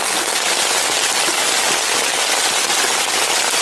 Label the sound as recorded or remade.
recorded